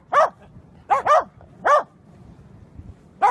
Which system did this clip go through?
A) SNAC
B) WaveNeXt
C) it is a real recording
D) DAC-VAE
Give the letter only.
C